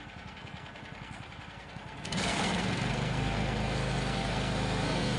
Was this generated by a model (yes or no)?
yes